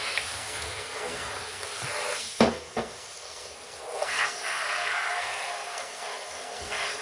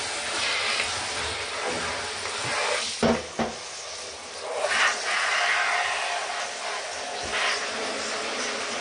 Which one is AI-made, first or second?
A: first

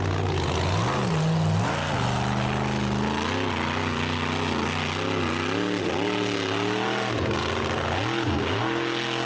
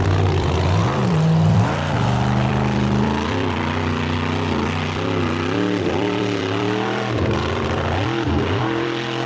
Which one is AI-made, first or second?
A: second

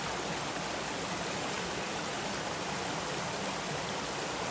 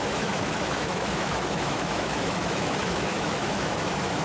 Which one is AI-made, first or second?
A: second